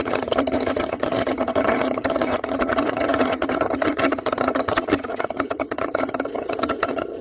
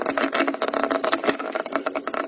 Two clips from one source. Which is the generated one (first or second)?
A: first